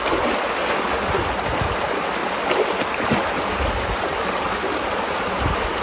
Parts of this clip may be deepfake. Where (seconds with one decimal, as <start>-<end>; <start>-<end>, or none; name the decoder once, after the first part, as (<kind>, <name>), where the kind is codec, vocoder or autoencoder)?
none